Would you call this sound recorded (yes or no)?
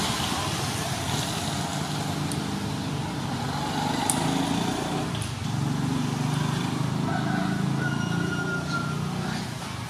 yes